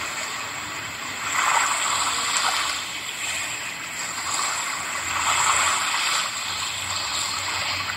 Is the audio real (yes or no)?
yes